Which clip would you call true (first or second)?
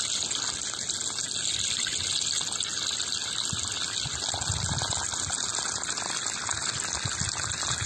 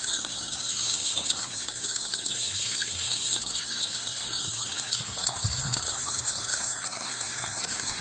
first